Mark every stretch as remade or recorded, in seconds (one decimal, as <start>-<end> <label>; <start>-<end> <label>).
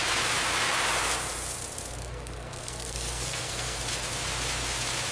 0.0-2.0 recorded; 2.0-3.8 remade; 3.8-5.1 recorded